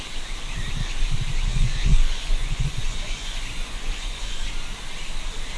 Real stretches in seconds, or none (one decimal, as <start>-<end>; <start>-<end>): 0.0-1.5; 4.5-5.6